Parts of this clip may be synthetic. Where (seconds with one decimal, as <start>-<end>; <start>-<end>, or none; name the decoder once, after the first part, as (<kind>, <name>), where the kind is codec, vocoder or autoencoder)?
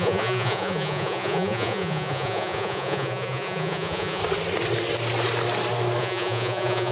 0.0-4.2 (vocoder, Vocos); 6.0-6.9